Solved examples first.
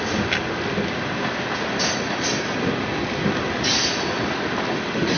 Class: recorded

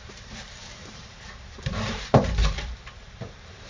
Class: remade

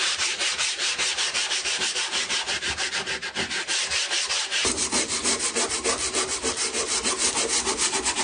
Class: remade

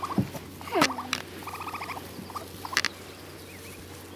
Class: recorded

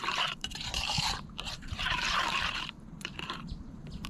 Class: remade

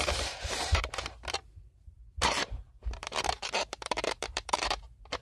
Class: remade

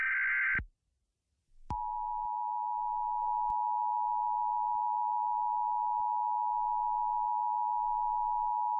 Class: recorded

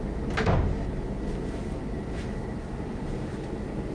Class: recorded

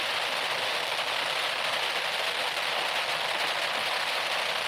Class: recorded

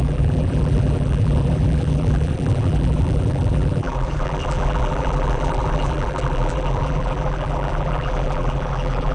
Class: remade